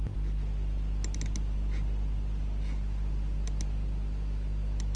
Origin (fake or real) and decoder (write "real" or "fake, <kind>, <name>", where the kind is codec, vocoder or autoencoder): real